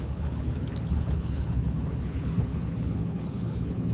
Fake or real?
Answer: fake